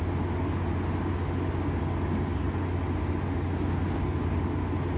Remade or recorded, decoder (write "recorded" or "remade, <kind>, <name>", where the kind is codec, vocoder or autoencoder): recorded